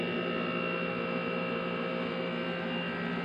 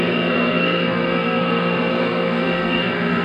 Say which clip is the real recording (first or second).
first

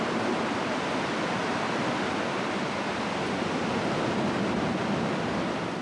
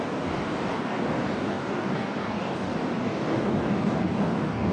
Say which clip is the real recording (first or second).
first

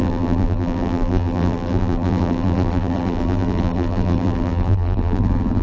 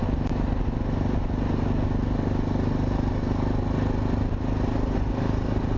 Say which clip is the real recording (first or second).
second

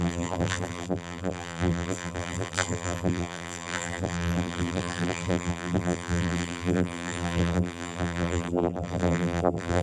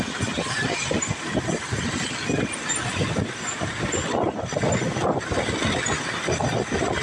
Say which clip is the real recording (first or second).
second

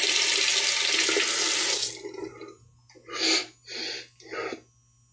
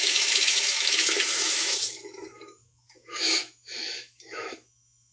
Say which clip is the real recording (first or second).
first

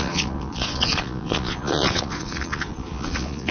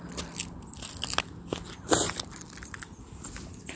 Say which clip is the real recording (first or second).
second